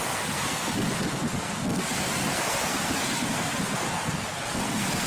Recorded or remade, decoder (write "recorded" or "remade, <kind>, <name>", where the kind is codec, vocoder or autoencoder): remade, codec, SNAC